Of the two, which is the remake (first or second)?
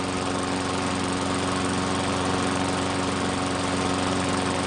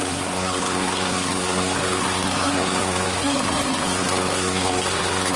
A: second